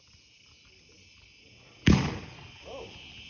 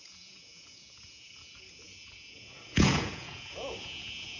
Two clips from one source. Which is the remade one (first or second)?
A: second